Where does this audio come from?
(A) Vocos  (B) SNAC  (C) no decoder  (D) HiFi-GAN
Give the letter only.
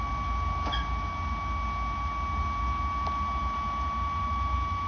C